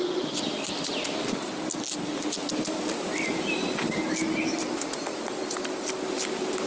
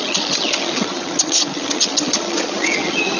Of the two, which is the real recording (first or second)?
first